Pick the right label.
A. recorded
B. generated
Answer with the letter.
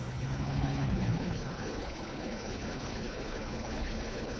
B